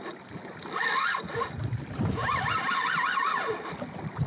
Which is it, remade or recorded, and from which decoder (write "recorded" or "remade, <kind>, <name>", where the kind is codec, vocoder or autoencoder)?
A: recorded